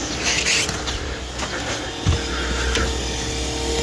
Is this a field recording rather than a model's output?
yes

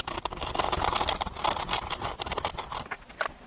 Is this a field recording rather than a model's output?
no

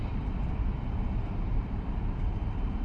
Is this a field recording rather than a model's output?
no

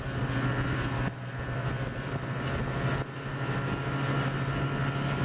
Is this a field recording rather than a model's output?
yes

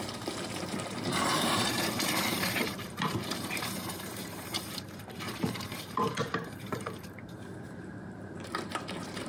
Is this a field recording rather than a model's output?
no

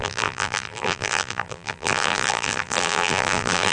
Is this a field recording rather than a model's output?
no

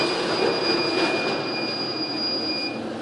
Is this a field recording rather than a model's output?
yes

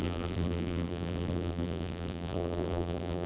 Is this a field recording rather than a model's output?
no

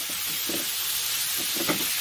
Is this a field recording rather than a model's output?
yes